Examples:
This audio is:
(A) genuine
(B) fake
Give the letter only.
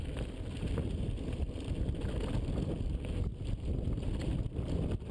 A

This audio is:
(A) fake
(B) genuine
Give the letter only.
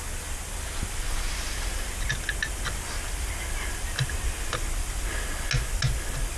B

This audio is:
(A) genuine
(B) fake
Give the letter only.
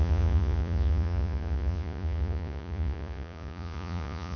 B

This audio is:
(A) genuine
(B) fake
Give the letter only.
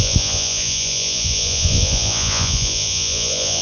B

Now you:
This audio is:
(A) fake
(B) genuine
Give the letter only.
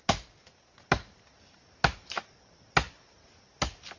B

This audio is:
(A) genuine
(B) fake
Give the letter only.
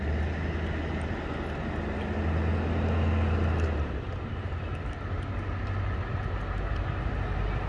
A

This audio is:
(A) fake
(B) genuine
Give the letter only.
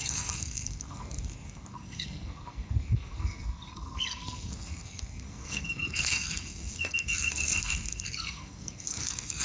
A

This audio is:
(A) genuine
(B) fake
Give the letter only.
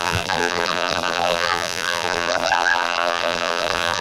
B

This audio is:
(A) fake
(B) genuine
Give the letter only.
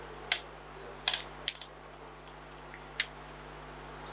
B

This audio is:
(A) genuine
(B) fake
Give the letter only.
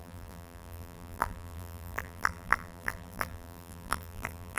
B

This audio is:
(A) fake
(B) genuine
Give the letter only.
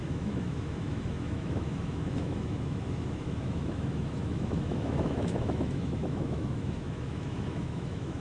A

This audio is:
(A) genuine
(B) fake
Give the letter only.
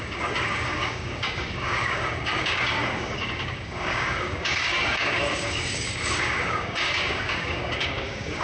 B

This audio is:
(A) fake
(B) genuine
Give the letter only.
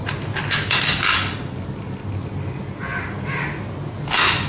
B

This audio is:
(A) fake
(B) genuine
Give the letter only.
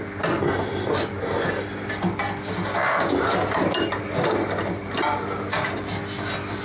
B